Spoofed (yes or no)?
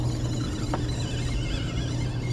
no